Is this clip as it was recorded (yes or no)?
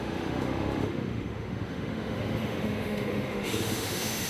no